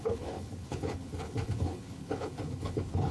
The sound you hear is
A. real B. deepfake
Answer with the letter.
B